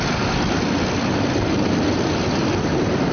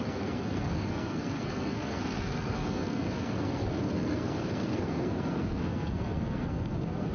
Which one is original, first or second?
first